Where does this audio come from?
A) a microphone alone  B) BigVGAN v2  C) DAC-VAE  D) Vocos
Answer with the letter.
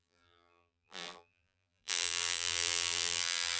B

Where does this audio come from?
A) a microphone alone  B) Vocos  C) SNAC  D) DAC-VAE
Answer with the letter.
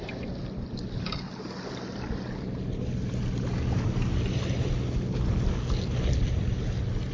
A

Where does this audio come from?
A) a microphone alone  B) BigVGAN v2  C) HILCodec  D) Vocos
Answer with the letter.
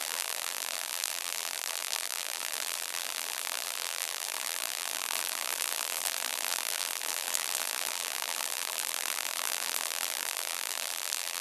B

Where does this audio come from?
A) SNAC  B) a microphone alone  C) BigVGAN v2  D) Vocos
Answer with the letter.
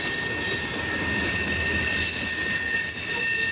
B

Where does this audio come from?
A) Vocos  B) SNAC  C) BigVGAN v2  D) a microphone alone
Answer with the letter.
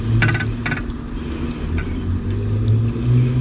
D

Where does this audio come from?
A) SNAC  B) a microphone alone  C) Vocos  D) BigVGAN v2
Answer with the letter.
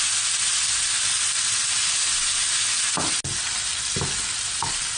B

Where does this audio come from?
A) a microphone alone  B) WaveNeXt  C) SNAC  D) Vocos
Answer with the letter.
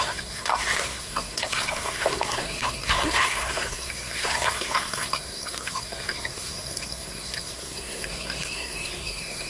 C